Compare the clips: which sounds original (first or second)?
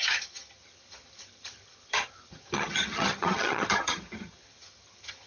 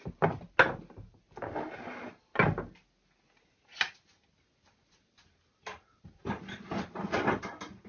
second